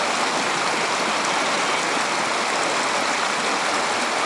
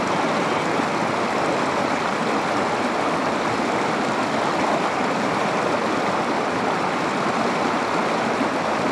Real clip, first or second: first